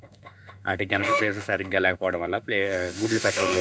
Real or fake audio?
fake